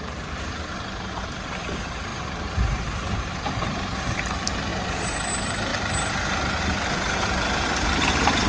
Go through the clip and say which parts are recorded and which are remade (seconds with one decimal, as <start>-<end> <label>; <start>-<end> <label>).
0.0-4.7 remade; 4.7-5.3 recorded; 5.3-5.7 remade; 5.7-6.6 recorded; 6.6-8.5 remade